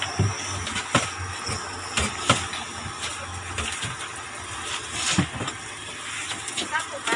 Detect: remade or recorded recorded